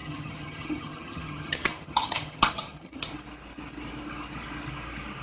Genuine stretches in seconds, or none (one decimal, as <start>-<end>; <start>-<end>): 3.1-5.2